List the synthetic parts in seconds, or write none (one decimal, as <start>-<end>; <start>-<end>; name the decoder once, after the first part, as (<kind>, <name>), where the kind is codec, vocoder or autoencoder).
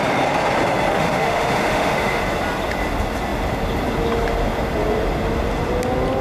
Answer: 0.9-2.2 (autoencoder, DAC-VAE)